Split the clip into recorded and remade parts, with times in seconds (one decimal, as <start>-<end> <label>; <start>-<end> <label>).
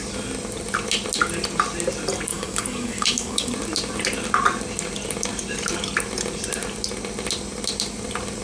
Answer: 0.0-2.3 recorded; 2.3-3.5 remade; 3.5-8.4 recorded